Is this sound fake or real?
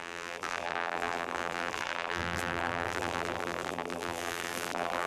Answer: fake